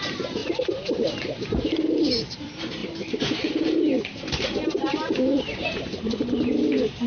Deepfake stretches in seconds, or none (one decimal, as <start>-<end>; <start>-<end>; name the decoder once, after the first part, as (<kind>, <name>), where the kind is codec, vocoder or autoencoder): 0.0-7.1 (vocoder, BigVGAN v2)